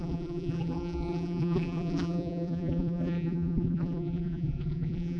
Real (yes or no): no